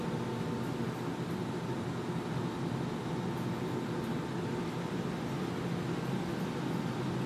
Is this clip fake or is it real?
real